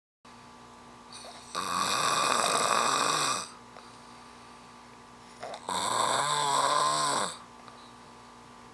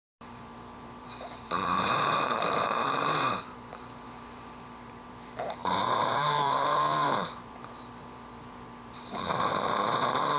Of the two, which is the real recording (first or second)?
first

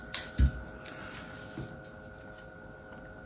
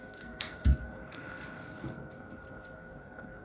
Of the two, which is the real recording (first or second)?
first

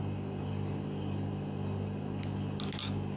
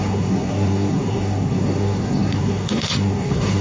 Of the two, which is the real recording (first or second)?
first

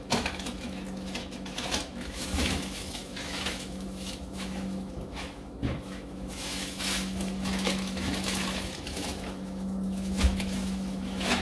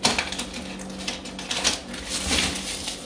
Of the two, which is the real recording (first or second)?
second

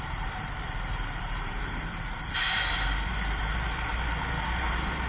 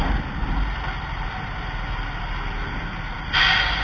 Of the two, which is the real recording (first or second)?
second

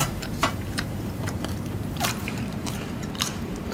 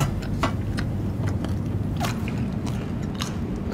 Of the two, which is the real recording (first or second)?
second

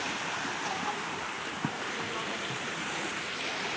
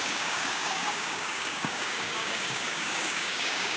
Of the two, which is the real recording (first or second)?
first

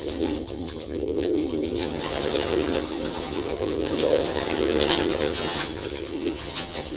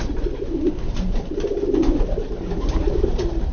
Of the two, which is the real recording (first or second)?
second